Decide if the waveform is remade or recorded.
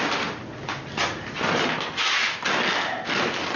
recorded